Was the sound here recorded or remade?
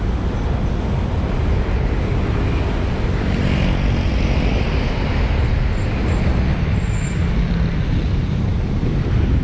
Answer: recorded